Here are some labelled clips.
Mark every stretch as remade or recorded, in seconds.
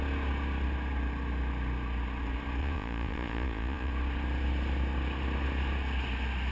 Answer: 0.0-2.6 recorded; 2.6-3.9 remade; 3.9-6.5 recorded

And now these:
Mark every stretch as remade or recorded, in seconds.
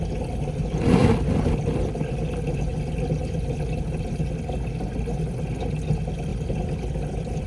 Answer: 0.0-7.5 recorded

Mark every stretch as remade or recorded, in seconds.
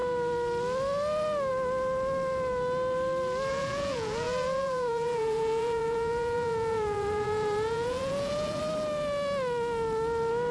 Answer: 0.0-3.5 recorded; 3.5-8.6 remade; 8.6-10.5 recorded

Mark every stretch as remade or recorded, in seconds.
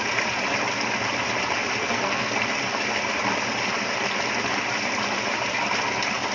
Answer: 0.0-1.8 recorded; 1.8-2.3 remade; 2.3-6.3 recorded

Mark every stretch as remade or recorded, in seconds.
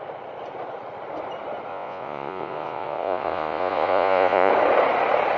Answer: 0.0-1.7 recorded; 1.7-4.5 remade; 4.5-5.4 recorded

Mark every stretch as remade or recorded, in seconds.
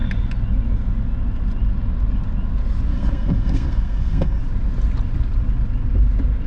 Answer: 0.0-2.9 recorded; 2.9-4.4 remade; 4.4-6.5 recorded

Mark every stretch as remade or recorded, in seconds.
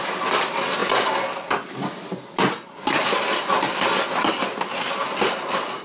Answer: 0.0-5.8 recorded